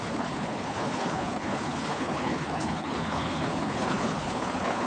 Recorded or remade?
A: remade